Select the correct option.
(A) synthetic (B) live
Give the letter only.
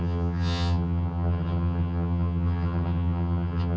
A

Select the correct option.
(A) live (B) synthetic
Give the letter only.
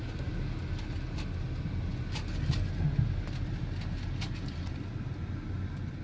A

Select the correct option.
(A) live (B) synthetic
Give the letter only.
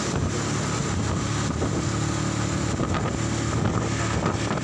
A